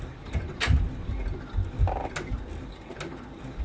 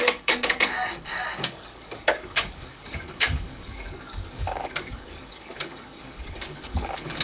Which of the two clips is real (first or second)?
first